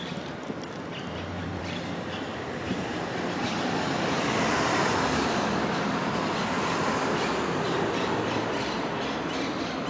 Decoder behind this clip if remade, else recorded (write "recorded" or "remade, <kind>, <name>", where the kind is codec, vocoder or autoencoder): remade, vocoder, BigVGAN v2